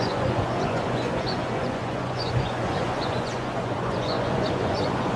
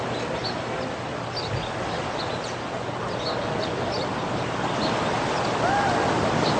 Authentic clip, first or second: second